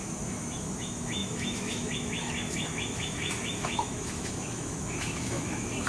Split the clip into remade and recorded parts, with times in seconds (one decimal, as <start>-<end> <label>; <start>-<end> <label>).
0.0-5.9 remade